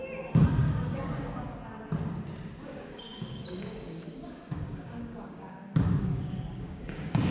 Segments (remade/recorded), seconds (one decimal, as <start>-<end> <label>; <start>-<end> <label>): 0.0-0.6 recorded; 0.6-1.6 remade; 1.6-2.6 recorded; 2.6-7.3 remade